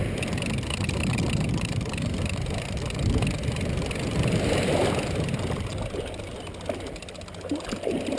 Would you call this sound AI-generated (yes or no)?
no